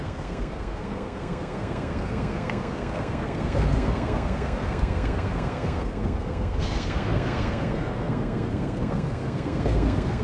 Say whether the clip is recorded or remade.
remade